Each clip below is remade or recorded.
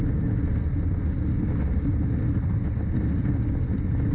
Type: recorded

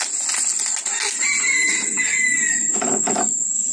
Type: recorded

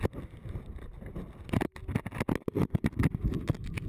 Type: recorded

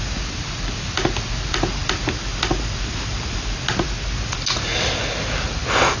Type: recorded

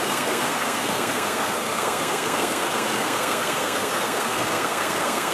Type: remade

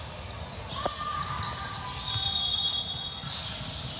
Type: recorded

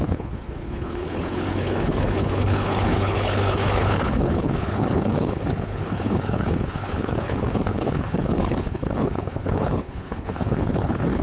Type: remade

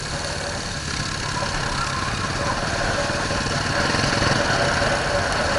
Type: recorded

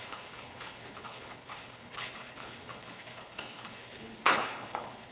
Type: remade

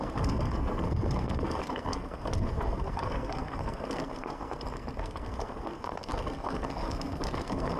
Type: remade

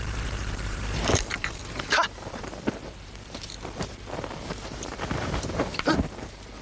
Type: remade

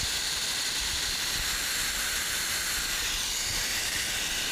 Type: recorded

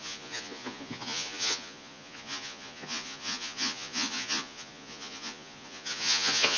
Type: remade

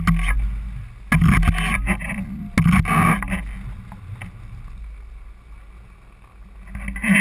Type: recorded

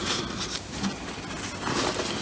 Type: recorded